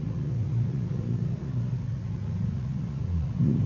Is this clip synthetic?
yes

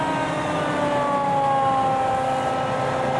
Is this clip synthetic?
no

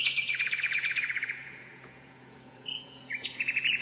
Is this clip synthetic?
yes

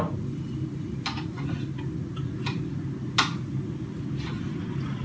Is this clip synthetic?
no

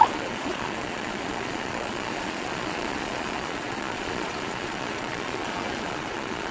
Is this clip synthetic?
yes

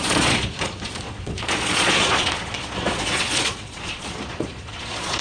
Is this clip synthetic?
yes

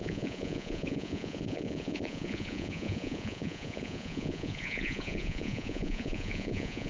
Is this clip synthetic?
yes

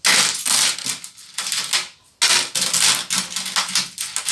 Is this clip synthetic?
no